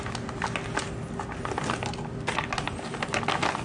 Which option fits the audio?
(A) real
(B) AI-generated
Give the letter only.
A